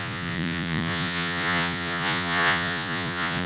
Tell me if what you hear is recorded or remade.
remade